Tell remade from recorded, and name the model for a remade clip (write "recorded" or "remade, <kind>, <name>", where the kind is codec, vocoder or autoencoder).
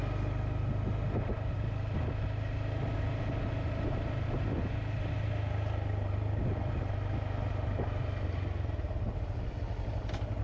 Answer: recorded